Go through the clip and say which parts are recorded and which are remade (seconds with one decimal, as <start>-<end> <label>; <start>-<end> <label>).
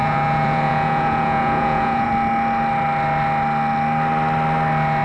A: 0.0-2.1 remade; 2.1-5.0 recorded